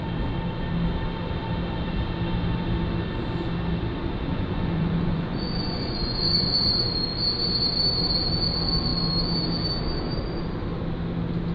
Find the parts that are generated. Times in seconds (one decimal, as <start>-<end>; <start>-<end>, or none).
4.3-6.9